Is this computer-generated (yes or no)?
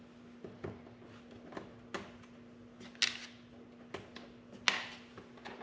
no